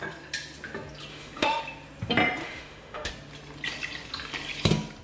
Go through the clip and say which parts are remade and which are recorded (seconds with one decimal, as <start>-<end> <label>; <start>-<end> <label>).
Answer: 0.0-1.1 recorded; 1.1-1.6 remade; 1.6-2.4 recorded; 2.4-3.1 remade; 3.1-5.0 recorded